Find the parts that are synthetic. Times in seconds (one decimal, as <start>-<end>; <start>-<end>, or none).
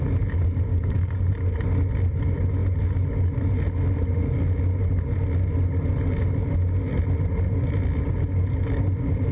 0.7-1.3